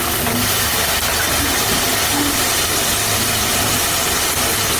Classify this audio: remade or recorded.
recorded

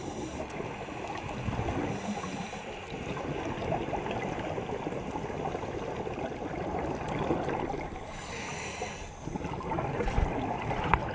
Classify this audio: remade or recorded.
recorded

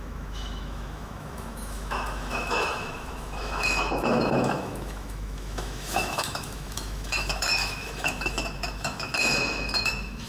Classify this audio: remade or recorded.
remade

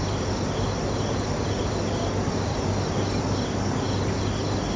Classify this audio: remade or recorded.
recorded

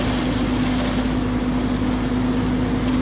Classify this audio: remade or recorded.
recorded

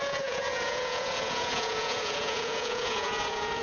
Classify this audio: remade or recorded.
remade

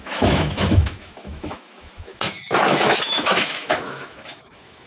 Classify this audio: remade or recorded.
remade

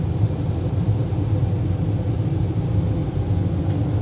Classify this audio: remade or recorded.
recorded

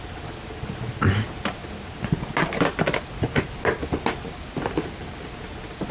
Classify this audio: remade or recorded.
recorded